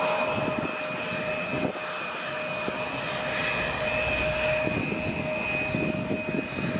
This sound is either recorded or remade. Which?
recorded